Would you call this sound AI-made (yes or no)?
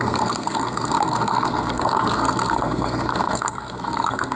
yes